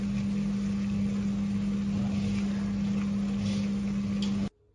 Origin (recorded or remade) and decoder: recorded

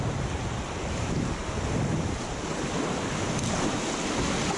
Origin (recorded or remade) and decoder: recorded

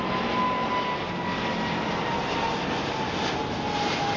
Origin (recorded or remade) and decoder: recorded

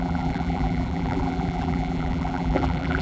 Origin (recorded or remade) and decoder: remade, vocoder, BigVGAN v2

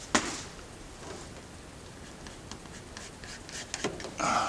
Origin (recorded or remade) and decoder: recorded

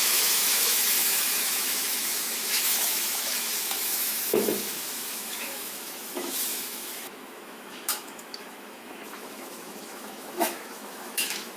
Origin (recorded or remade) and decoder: remade, autoencoder, DAC-VAE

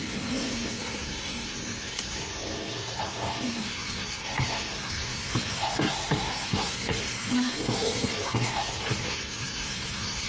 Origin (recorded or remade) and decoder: remade, codec, SNAC